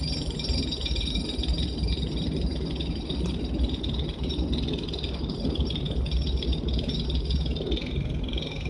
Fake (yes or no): no